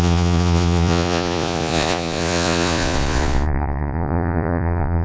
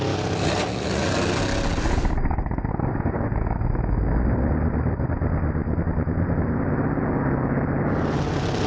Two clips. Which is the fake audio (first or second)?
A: first